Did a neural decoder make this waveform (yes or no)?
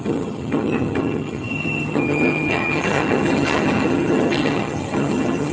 yes